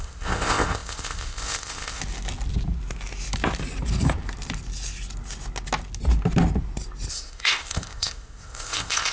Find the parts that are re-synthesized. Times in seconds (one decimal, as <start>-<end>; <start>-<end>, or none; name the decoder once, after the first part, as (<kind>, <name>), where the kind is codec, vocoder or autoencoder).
0.0-2.0 (codec, ZipCodec); 7.1-9.1